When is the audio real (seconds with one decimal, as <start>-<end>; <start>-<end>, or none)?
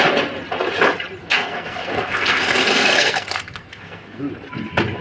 0.0-1.2; 4.2-5.0